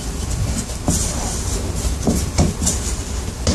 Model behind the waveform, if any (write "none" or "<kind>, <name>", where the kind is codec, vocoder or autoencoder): none